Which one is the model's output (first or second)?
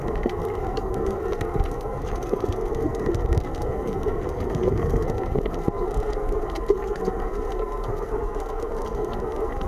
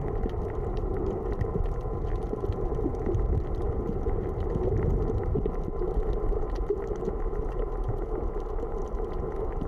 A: first